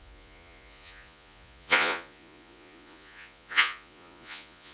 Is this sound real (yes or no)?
no